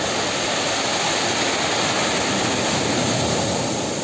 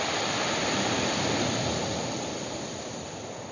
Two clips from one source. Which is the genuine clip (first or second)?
first